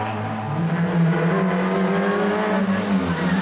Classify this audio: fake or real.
real